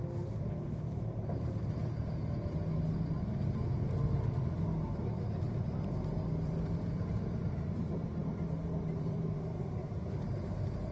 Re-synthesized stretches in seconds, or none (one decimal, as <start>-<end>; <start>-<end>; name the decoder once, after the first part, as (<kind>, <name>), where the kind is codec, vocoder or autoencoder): 0.5-1.8 (vocoder, BigVGAN v2); 6.4-10.9